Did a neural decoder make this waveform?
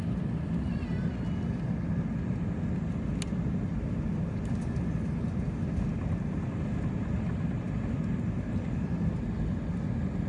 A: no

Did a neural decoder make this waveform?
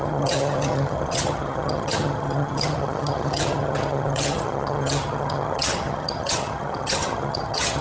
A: yes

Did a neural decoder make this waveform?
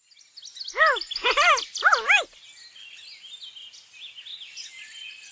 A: no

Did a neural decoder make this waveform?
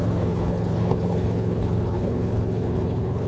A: yes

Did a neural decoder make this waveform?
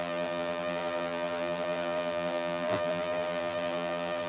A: yes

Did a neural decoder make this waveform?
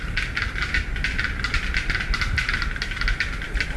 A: no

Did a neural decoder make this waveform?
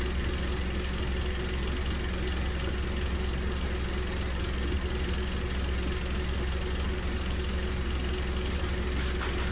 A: no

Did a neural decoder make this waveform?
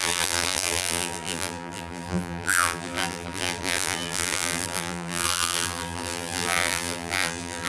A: yes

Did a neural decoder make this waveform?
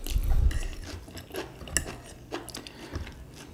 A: no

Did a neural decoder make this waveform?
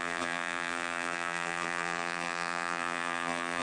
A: yes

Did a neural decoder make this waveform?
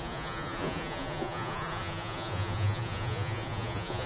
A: yes